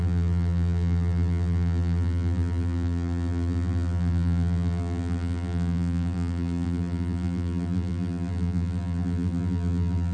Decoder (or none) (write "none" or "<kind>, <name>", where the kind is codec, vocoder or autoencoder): vocoder, BigVGAN v2